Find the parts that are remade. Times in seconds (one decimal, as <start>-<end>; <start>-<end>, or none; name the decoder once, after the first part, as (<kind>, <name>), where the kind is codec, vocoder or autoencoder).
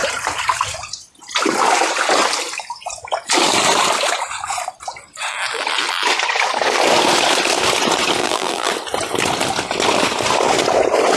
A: 8.2-8.7 (vocoder, BigVGAN v2)